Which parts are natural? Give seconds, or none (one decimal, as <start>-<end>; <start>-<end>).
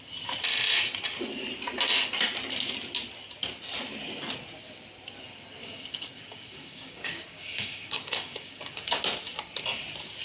0.0-5.6; 9.0-10.2